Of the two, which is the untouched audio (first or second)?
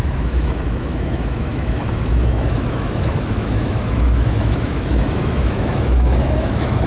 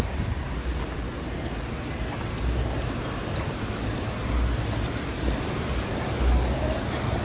second